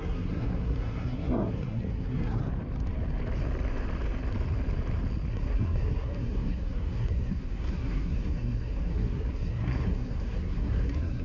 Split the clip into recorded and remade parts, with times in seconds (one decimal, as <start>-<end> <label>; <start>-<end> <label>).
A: 0.0-2.4 remade; 2.4-5.3 recorded; 5.3-11.2 remade